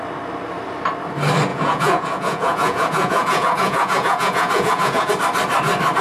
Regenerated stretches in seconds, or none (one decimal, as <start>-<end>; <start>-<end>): 1.5-5.1